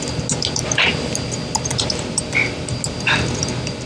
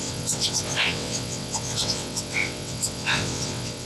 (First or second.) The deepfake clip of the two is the second